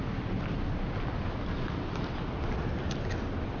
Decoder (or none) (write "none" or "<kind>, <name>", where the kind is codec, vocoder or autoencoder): none